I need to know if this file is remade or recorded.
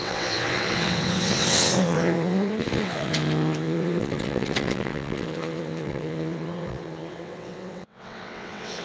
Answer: remade